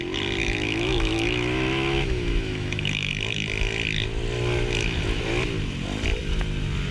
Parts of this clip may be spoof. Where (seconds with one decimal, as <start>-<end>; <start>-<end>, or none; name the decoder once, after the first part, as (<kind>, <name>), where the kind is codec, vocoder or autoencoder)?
0.4-3.1 (autoencoder, DAC-VAE)